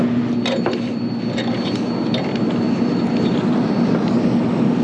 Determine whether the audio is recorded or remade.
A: recorded